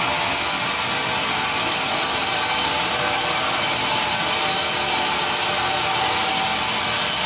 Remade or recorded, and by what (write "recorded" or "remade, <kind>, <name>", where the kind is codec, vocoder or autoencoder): recorded